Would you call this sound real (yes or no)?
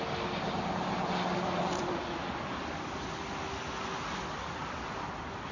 yes